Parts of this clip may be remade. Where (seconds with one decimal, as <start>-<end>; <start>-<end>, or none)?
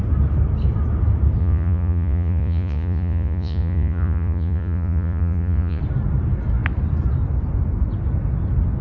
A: 1.4-5.8